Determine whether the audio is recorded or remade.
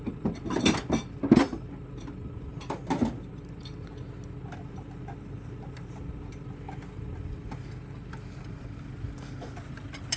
recorded